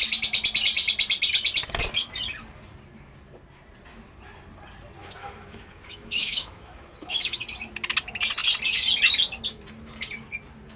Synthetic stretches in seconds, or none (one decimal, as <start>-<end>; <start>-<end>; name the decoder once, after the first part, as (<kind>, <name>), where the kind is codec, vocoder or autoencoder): 5.0-7.4 (autoencoder, DAC-VAE)